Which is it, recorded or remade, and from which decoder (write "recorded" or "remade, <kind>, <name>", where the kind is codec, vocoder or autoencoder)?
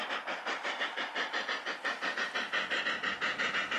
recorded